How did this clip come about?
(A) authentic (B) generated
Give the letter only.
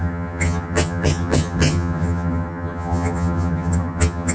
B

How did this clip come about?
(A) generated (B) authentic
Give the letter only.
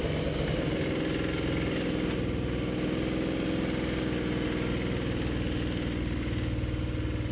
B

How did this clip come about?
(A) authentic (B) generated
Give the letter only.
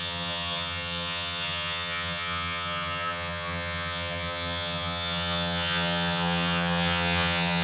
B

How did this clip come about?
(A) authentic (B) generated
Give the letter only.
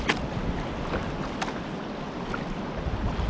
A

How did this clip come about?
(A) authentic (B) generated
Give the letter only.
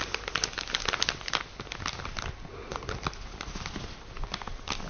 A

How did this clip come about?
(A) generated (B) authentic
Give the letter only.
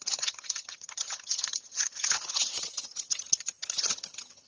A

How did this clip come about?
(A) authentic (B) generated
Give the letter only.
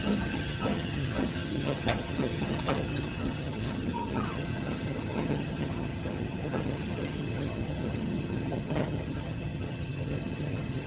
B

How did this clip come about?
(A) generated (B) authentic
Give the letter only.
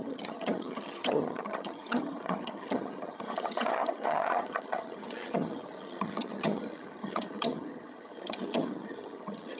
A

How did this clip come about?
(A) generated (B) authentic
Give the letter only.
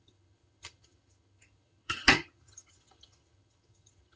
A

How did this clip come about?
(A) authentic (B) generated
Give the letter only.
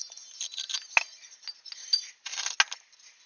A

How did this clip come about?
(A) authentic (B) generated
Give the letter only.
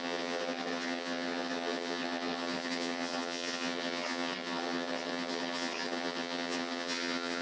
B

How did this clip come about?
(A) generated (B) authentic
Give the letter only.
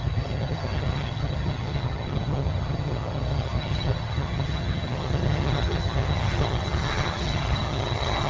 A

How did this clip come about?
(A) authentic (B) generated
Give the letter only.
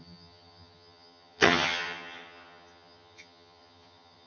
B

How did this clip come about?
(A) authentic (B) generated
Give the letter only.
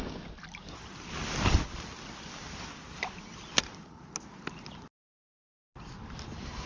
A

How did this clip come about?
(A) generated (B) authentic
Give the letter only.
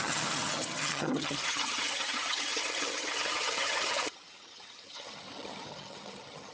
A